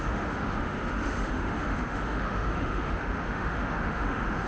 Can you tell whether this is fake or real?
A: fake